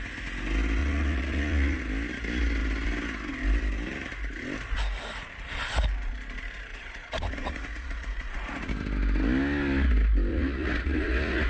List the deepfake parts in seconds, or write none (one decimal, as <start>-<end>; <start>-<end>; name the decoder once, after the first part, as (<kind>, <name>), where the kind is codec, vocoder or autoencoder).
0.8-1.8 (vocoder, Vocos); 6.7-8.7; 10.3-11.5